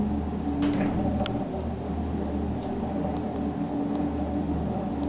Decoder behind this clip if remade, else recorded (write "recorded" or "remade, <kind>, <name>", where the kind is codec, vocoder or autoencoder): recorded